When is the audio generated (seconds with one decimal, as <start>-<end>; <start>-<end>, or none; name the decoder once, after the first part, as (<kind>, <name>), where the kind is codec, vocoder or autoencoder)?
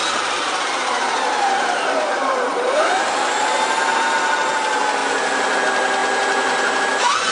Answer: 0.0-3.3 (vocoder, BigVGAN v2); 5.0-5.6; 6.0-6.8